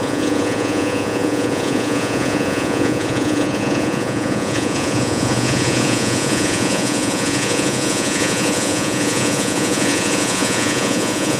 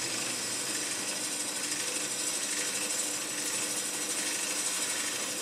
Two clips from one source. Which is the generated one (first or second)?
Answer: first